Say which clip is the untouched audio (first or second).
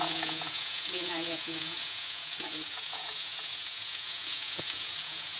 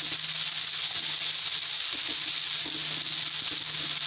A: second